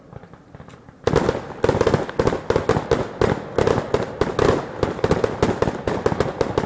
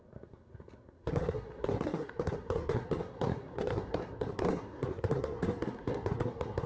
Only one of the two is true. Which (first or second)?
first